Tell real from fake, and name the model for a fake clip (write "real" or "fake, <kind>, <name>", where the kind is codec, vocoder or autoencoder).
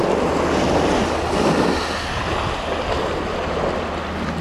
real